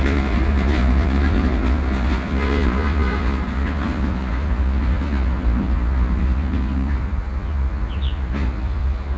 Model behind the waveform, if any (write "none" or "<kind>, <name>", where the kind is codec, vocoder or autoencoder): vocoder, Vocos